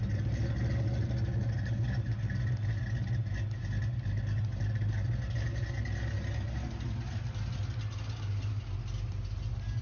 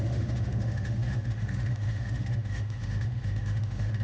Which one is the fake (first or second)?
second